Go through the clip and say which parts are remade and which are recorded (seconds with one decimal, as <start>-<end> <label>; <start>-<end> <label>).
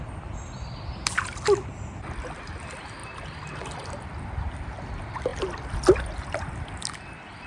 0.0-3.0 recorded; 3.0-4.1 remade; 4.1-5.3 recorded; 5.3-6.5 remade; 6.5-7.5 recorded